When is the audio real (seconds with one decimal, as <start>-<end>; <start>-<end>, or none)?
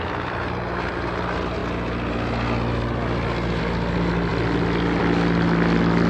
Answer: 0.0-6.1